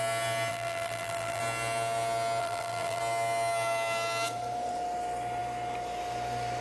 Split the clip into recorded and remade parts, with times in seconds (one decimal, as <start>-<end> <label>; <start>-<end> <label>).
0.0-0.5 recorded; 0.5-1.4 remade; 1.4-2.4 recorded; 2.4-3.0 remade; 3.0-6.6 recorded